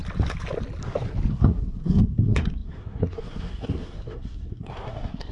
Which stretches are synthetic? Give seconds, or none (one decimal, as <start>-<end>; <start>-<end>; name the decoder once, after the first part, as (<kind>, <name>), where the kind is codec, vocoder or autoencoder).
1.3-5.3 (codec, SNAC)